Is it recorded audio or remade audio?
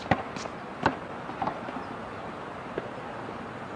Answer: recorded